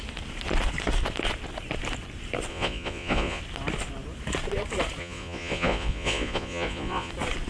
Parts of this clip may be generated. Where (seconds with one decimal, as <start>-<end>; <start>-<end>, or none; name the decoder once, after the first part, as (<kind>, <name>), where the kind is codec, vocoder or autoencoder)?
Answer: 2.5-3.4 (vocoder, Vocos); 5.0-7.1